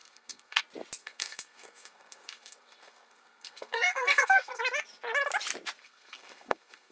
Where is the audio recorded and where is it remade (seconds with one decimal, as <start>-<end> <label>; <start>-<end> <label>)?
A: 0.0-0.6 remade; 0.6-1.0 recorded; 1.0-4.6 remade; 4.6-5.8 recorded; 5.8-6.9 remade